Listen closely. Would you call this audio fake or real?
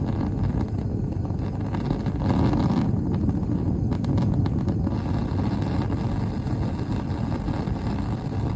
real